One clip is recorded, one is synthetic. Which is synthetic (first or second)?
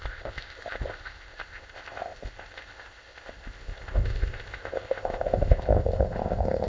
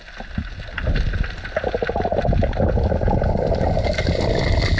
first